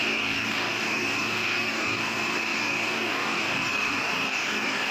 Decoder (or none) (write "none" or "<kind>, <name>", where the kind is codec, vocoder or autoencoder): codec, DAC